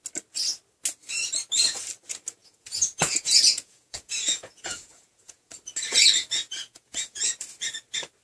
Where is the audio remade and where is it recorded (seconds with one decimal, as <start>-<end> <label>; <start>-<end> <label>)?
0.0-2.4 recorded; 2.4-5.5 remade; 5.5-6.5 recorded; 6.5-7.3 remade; 7.3-8.2 recorded